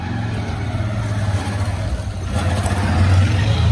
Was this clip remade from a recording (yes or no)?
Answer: no